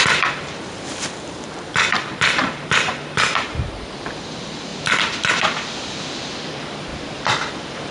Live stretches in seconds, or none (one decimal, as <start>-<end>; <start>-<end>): 4.7-6.5; 6.9-7.5